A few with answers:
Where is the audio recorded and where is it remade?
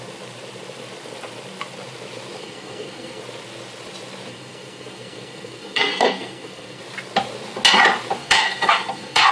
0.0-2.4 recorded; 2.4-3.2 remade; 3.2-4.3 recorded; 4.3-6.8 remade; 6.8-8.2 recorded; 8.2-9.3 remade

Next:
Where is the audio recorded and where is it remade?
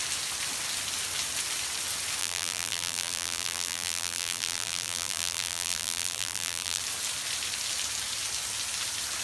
0.0-2.2 recorded; 2.2-6.8 remade; 6.8-9.2 recorded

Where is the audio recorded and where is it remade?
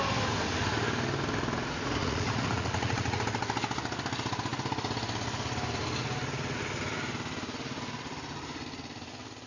0.0-2.0 recorded; 2.0-3.2 remade; 3.2-9.5 recorded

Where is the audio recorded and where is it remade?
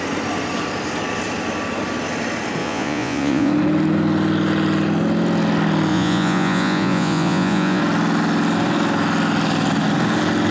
0.0-2.6 recorded; 2.6-3.5 remade; 3.5-5.9 recorded; 5.9-7.8 remade; 7.8-10.5 recorded